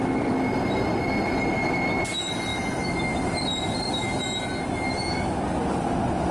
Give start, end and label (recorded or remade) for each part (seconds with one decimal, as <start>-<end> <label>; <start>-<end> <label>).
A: 0.0-6.3 recorded